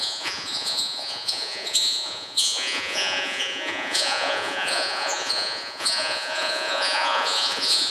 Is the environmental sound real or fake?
fake